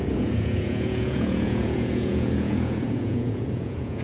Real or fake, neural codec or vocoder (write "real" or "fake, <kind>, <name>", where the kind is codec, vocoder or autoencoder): fake, vocoder, Vocos